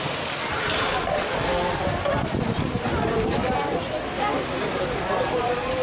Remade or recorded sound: recorded